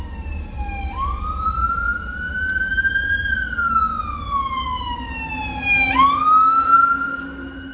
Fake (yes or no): no